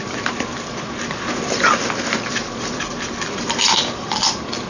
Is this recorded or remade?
remade